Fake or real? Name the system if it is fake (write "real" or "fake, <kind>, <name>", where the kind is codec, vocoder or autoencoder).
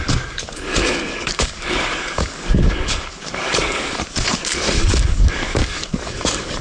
fake, codec, DAC